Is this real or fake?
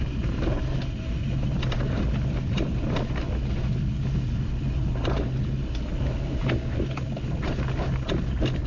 real